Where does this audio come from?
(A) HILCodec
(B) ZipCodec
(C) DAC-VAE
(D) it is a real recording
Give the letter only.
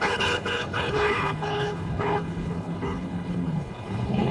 A